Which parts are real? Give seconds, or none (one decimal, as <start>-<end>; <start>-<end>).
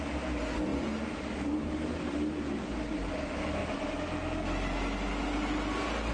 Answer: 0.0-6.1